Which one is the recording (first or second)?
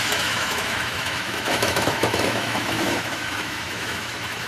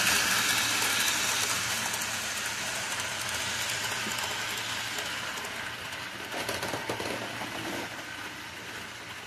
second